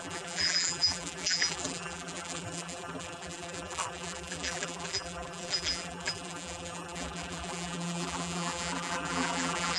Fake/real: fake